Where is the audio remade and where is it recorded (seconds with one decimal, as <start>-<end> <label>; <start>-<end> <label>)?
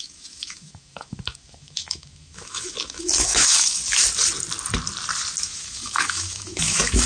0.0-3.8 remade; 3.8-5.4 recorded; 5.4-7.1 remade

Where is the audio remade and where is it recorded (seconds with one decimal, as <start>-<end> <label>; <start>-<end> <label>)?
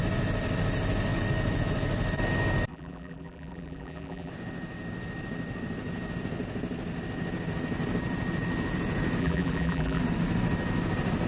0.0-2.7 recorded; 2.7-4.3 remade; 4.3-9.2 recorded; 9.2-10.0 remade; 10.0-11.3 recorded